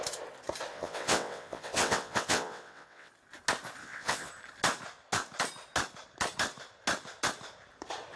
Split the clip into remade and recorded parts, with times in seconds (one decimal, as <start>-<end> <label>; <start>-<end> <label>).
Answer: 0.0-0.7 recorded; 0.7-3.1 remade; 3.1-3.8 recorded; 3.8-4.3 remade; 4.3-8.2 recorded